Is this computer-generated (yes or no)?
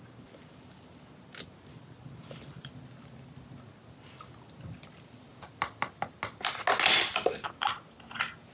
no